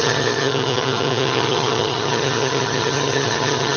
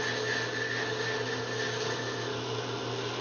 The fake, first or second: first